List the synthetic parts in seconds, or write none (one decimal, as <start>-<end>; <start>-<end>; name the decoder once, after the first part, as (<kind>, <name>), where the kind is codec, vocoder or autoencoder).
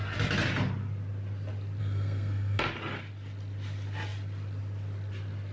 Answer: 1.8-2.6 (codec, SNAC)